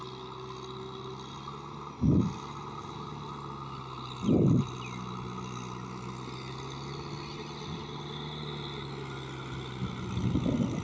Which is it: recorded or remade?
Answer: recorded